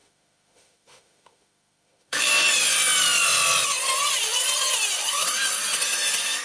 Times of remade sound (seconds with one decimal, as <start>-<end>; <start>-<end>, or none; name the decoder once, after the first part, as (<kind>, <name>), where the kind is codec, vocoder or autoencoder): 0.0-2.2 (autoencoder, DAC-VAE)